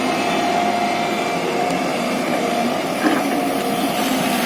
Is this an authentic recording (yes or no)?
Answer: yes